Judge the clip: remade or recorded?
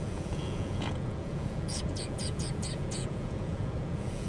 remade